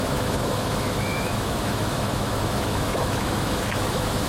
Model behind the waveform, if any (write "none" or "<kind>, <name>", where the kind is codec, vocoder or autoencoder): autoencoder, DAC-VAE